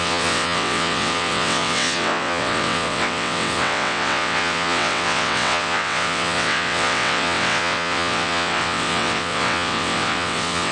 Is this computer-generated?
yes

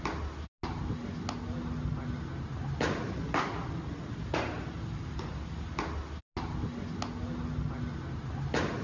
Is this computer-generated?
no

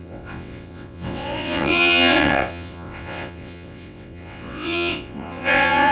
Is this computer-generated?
yes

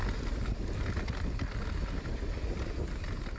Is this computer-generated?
no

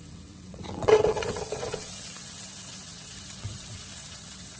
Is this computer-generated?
yes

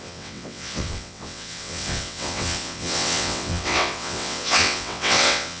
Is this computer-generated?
yes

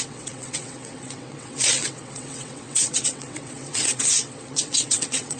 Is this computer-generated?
yes